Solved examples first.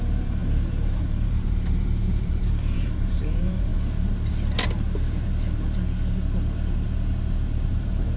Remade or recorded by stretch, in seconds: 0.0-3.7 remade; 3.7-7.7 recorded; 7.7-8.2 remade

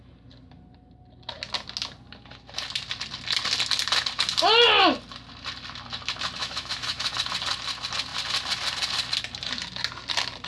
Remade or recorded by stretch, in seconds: 0.0-6.4 recorded; 6.4-7.1 remade; 7.1-10.5 recorded